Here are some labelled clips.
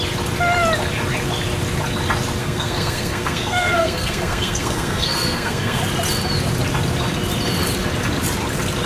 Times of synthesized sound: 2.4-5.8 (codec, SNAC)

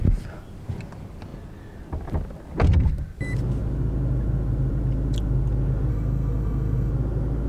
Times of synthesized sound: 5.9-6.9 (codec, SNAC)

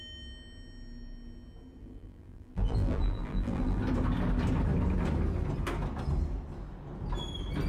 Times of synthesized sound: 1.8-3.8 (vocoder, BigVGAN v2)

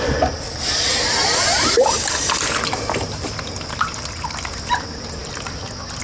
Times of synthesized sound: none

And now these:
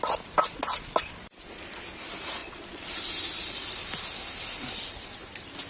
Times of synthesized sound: 2.4-2.9 (vocoder, Vocos)

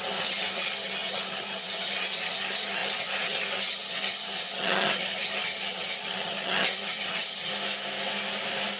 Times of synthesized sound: 0.0-7.5 (vocoder, HiFi-GAN)

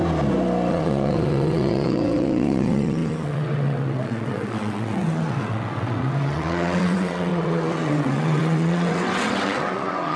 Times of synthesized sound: 0.7-10.2 (vocoder, WaveNeXt)

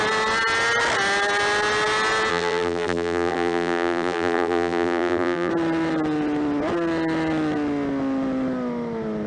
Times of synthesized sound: 2.3-5.5 (vocoder, BigVGAN v2)